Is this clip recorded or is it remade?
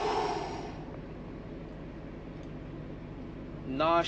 recorded